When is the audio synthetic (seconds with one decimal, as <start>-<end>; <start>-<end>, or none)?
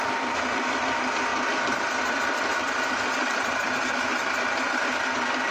1.3-3.9